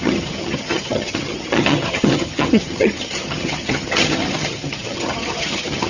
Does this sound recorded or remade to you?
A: remade